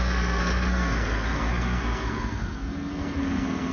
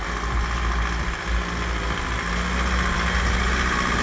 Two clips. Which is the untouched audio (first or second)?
second